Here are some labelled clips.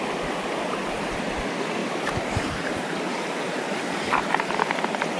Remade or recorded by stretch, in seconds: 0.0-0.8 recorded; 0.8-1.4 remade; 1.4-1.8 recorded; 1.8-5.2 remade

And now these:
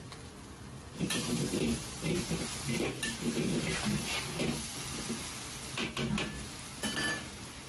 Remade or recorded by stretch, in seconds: 0.0-7.7 recorded

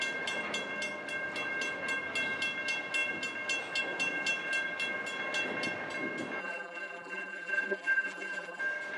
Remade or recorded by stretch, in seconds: 0.0-6.4 recorded; 6.4-8.6 remade; 8.6-9.0 recorded

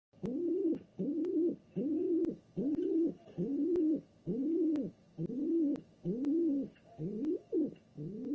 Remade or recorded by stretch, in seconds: 0.0-0.7 remade; 0.7-3.7 recorded; 3.7-5.9 remade; 5.9-8.3 recorded

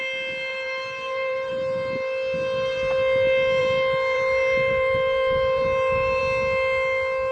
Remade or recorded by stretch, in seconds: 0.0-0.5 recorded; 0.5-1.5 remade; 1.5-3.6 recorded; 3.6-6.2 remade; 6.2-7.3 recorded

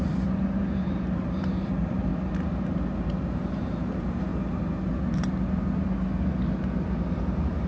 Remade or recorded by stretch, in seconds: 0.0-2.1 remade; 2.1-3.2 recorded; 3.2-4.3 remade; 4.3-7.1 recorded; 7.1-7.7 remade

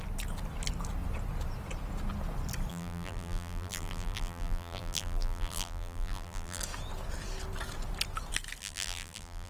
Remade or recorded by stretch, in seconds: 0.0-2.7 recorded; 2.7-6.6 remade; 6.6-8.6 recorded; 8.6-9.5 remade